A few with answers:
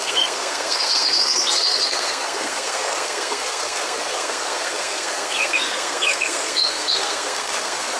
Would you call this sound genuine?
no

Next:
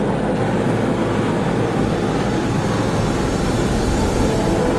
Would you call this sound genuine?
yes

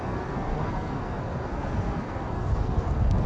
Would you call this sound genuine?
no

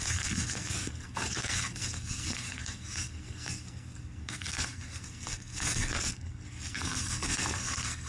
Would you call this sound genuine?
no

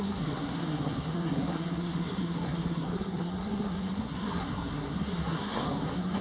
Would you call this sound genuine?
no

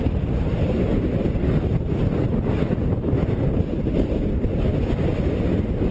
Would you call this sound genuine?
yes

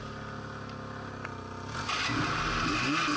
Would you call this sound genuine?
yes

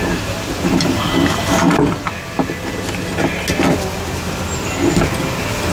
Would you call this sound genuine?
yes